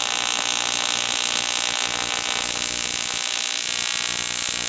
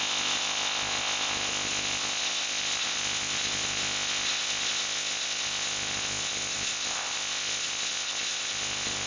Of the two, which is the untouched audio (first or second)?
first